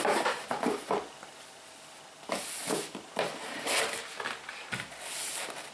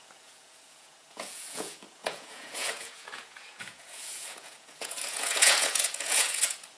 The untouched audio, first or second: first